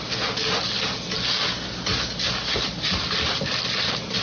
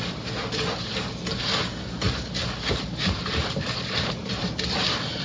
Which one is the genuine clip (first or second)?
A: first